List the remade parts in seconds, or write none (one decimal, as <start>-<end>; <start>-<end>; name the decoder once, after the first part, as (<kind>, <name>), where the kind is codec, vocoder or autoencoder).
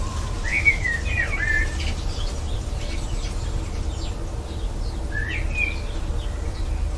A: 0.5-1.0 (autoencoder, DAC-VAE)